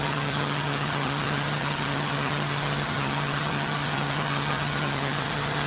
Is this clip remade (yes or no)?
yes